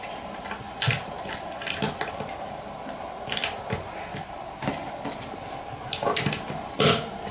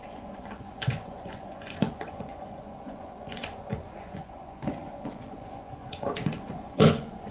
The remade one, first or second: second